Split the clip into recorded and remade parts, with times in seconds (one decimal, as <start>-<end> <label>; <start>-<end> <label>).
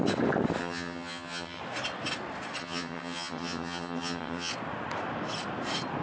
0.0-0.6 recorded; 0.6-1.6 remade; 1.6-2.6 recorded; 2.6-4.5 remade; 4.5-6.0 recorded